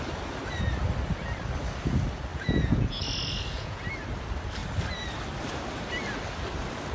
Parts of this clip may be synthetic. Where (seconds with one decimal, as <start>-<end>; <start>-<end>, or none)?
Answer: 2.3-3.8